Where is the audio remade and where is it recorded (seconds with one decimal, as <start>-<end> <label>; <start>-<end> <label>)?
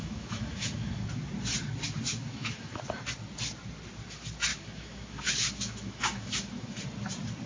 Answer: 0.0-0.9 remade; 0.9-2.1 recorded; 2.1-2.8 remade; 2.8-4.5 recorded; 4.5-6.8 remade; 6.8-7.5 recorded